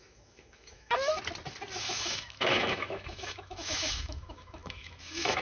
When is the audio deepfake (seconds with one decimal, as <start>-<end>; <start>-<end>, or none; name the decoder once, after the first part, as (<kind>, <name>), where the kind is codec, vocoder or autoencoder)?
0.0-1.1 (autoencoder, DAC-VAE); 1.8-5.4